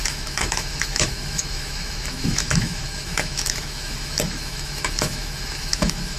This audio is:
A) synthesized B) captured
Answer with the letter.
A